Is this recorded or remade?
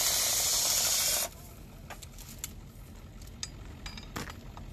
recorded